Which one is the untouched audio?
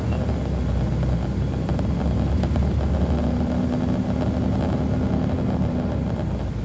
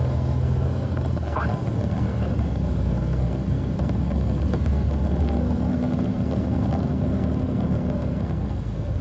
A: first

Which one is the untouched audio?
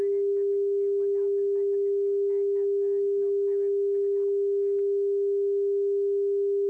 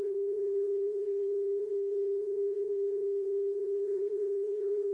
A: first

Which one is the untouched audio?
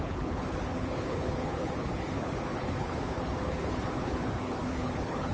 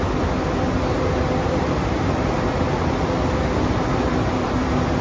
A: second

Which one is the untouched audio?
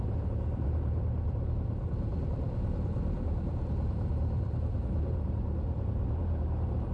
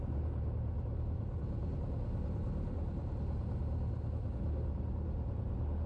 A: second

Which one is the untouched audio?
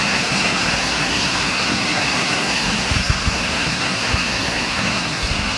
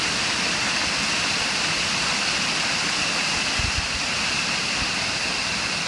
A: second